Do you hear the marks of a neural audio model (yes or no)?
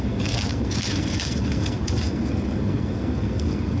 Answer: yes